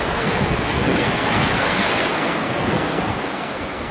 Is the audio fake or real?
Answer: fake